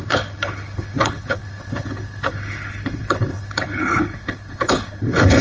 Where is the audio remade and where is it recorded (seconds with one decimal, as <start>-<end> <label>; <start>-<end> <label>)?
0.0-5.4 remade